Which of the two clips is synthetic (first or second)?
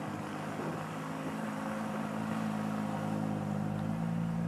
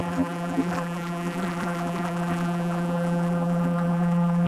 second